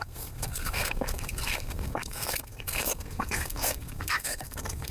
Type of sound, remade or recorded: remade